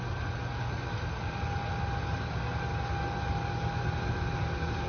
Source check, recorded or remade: recorded